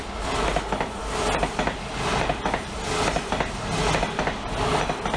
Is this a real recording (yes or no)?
yes